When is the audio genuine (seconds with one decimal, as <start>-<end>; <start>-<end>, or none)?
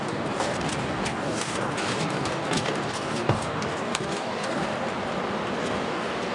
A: 4.7-5.6